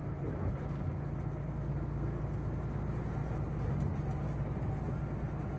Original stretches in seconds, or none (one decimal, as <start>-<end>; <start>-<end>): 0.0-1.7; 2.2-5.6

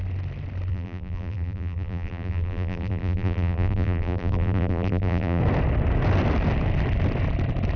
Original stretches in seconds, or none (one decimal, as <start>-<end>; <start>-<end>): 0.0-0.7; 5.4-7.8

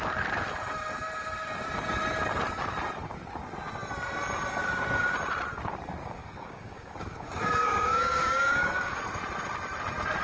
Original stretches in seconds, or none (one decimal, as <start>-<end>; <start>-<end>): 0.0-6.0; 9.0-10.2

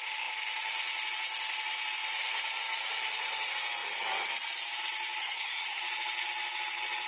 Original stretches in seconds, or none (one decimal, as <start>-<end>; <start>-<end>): 0.0-5.2; 5.8-7.1

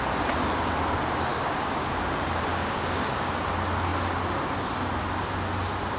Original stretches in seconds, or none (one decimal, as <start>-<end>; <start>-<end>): 0.0-1.3; 1.9-2.5; 3.3-6.0

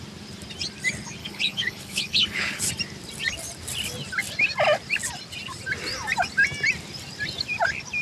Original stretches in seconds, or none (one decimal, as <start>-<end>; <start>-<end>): 0.0-1.2; 2.7-8.0

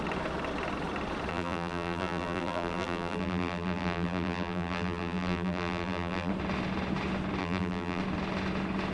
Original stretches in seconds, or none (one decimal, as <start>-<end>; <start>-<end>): 0.0-1.3; 6.3-7.4; 8.0-8.9

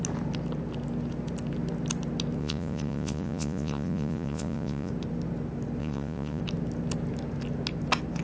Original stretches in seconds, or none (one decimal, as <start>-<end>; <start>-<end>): 0.0-2.4; 4.9-5.8; 6.4-8.2